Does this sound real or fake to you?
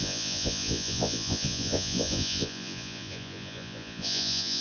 fake